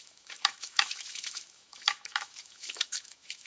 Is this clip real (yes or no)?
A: no